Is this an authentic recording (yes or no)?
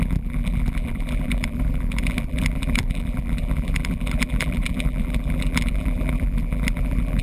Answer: no